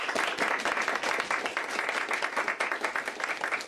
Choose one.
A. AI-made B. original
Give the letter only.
B